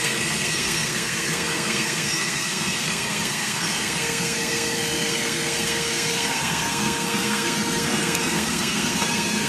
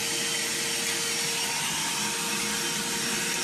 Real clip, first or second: second